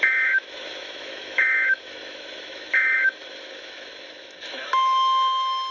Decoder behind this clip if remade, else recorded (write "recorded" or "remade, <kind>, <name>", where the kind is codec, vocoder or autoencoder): remade, autoencoder, DAC-VAE